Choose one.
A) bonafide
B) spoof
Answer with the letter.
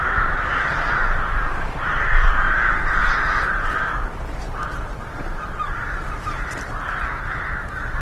B